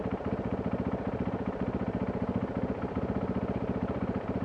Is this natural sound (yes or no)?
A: no